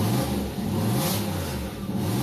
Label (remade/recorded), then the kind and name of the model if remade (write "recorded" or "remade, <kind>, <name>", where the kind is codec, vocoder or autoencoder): recorded